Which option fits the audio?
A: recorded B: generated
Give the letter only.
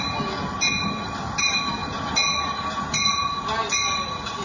A